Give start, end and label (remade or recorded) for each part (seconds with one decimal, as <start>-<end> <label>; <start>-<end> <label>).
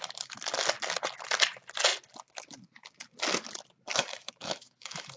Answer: 0.0-3.9 recorded; 3.9-5.2 remade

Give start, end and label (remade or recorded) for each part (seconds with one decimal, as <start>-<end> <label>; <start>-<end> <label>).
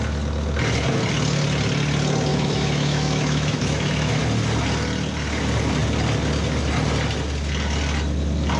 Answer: 0.0-2.3 recorded; 2.3-4.2 remade; 4.2-8.6 recorded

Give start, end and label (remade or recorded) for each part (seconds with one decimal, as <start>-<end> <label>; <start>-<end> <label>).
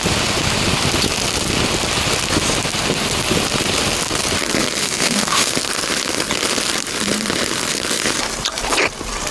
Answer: 0.0-4.8 recorded; 4.8-5.5 remade; 5.5-9.3 recorded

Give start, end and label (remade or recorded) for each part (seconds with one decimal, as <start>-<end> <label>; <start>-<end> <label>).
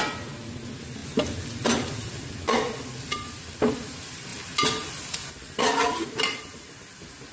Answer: 0.0-7.3 recorded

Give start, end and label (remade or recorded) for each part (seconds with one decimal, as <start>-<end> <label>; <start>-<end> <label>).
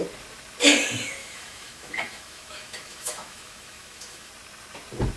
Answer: 0.0-1.2 recorded; 1.2-4.3 remade; 4.3-5.2 recorded